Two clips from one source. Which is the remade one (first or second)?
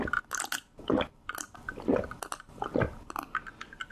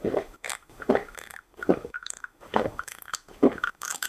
second